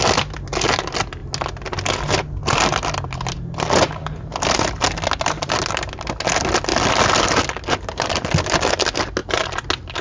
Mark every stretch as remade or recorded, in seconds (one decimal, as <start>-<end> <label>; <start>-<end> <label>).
0.0-10.0 recorded